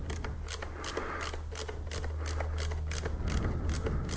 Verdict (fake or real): real